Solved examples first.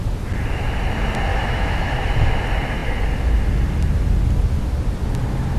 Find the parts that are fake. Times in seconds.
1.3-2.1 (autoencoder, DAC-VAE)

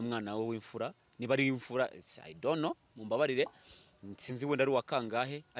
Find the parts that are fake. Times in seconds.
none

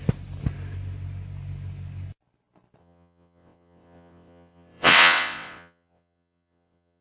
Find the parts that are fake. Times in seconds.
2.8-7.0 (vocoder, WaveNeXt)

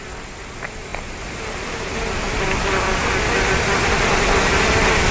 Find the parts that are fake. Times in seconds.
none

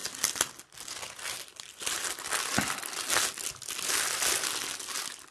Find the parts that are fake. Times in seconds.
none

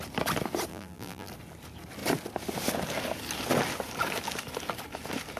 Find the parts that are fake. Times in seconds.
0.7-1.3 (vocoder, BigVGAN v2)

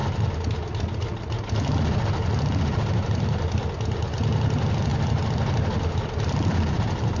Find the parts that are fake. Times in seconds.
none

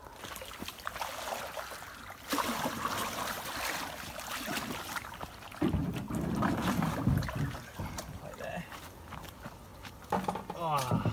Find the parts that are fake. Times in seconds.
none